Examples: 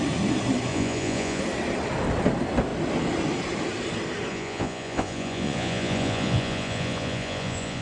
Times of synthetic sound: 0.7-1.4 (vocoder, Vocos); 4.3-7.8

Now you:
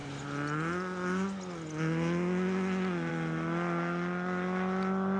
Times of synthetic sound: none

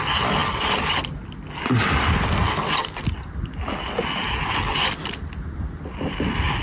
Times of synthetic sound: none

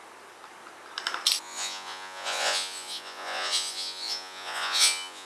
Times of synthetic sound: 1.4-5.3 (vocoder, Vocos)

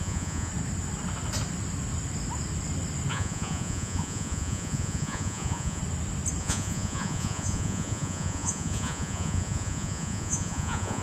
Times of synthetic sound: 0.0-0.5 (vocoder, Vocos); 3.1-5.8; 6.4-11.0

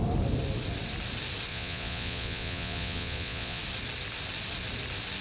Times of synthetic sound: 1.5-3.6 (vocoder, Vocos)